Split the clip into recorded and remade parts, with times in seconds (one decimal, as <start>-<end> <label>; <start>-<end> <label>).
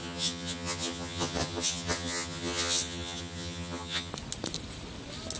0.0-4.1 remade; 4.1-5.4 recorded